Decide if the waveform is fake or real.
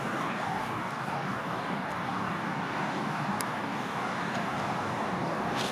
fake